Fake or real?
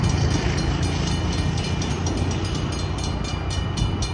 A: real